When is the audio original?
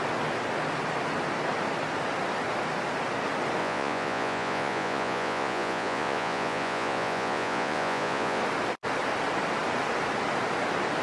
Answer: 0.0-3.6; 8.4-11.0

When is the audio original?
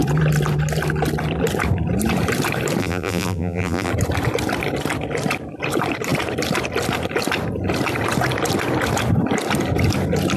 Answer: 0.0-2.8; 3.9-10.4